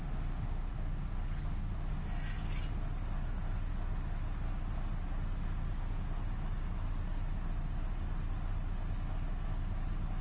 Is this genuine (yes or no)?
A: yes